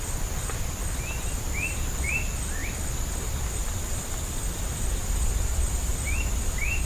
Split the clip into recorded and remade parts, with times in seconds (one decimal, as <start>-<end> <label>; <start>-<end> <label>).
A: 0.0-2.6 recorded; 2.6-6.8 remade